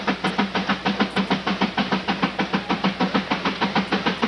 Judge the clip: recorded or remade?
recorded